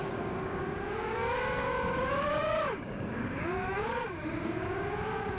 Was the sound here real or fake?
fake